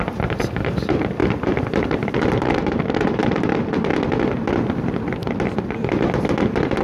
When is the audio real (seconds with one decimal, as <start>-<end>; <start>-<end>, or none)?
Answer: 3.9-6.8

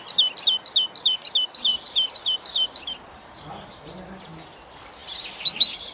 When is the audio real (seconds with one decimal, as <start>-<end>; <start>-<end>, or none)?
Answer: 0.0-1.7; 3.7-5.9

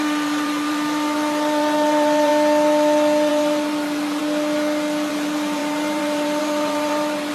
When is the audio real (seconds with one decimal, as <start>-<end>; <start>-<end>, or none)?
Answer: 2.3-3.3; 4.2-5.1

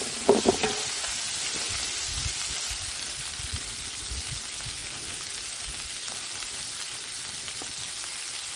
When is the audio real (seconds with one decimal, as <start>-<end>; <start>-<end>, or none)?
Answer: 0.0-8.6

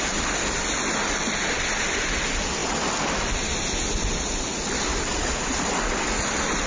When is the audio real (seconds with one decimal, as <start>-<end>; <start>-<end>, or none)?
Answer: 0.0-6.7

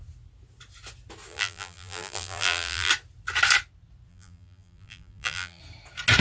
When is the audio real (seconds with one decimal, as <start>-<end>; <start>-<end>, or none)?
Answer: 0.0-1.3; 2.9-4.1; 5.6-6.2

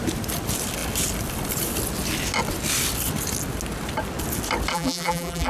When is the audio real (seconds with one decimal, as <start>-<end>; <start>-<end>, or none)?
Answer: 0.0-4.7

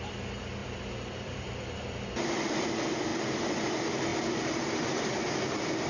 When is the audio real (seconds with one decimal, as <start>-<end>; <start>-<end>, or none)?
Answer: 0.0-0.6; 2.7-3.1; 3.6-5.9